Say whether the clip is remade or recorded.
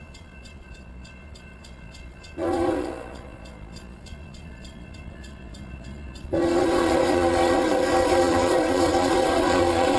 remade